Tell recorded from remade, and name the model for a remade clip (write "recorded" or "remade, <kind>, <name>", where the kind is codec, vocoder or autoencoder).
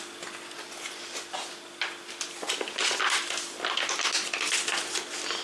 recorded